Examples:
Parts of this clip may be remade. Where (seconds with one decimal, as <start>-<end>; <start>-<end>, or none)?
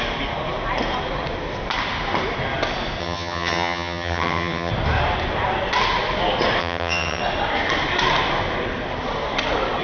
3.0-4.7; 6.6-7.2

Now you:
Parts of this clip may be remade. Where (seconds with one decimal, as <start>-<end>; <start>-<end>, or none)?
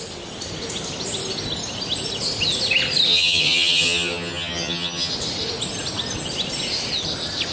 3.1-5.1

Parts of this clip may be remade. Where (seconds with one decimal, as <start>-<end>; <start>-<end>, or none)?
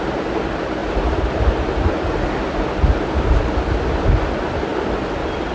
none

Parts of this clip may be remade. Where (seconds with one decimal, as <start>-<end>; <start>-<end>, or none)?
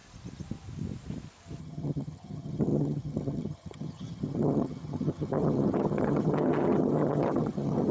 1.6-7.9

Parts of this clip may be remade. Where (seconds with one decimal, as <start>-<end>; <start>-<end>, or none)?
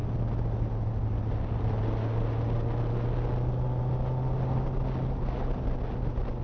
none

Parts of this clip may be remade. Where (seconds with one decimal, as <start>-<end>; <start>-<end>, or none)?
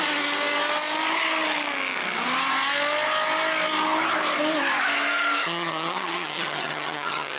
5.4-7.4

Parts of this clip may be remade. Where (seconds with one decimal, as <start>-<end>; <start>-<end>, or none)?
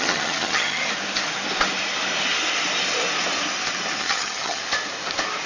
0.0-0.8; 4.0-4.6